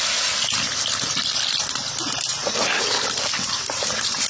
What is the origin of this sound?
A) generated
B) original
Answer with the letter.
A